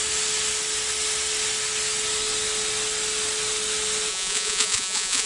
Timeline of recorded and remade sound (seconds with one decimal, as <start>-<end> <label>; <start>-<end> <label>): 0.0-4.1 recorded; 4.1-5.3 remade